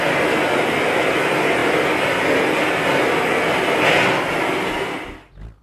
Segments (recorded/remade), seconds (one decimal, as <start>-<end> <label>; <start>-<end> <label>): 0.0-5.6 recorded